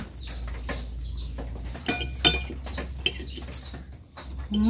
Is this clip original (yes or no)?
yes